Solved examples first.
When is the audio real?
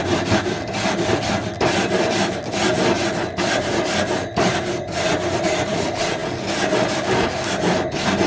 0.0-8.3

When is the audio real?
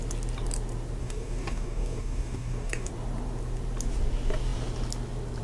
0.0-1.0; 2.9-5.4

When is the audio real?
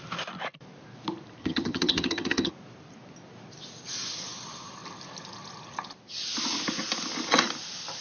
0.0-1.4; 2.5-8.0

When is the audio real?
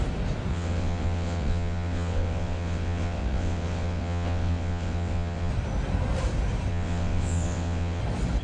0.0-0.5; 5.5-6.7; 8.0-8.4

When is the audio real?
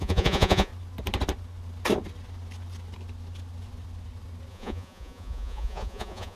0.7-4.5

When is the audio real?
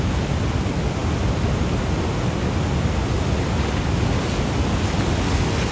0.0-5.7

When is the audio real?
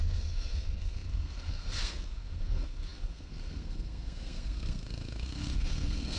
none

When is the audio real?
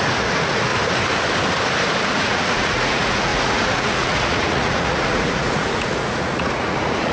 0.7-2.0